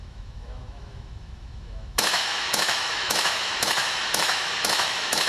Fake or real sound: fake